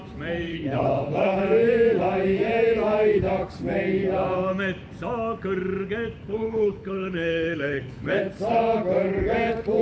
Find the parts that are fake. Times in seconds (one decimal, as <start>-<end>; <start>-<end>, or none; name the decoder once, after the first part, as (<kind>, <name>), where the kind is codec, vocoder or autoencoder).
0.5-1.4 (codec, HILCodec); 6.2-8.2